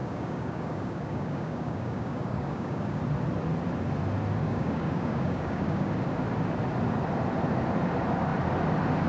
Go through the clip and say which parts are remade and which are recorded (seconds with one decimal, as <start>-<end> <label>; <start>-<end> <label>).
0.0-3.0 remade; 3.0-4.4 recorded; 4.4-5.9 remade; 5.9-9.1 recorded